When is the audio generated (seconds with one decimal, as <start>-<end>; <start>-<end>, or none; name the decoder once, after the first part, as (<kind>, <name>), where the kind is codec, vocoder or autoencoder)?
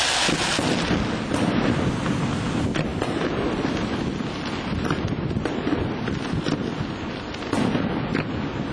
none